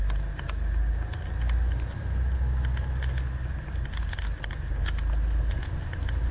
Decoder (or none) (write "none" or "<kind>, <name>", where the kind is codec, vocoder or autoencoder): none